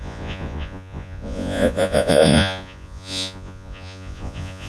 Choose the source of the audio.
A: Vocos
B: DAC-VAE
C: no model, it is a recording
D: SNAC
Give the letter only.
A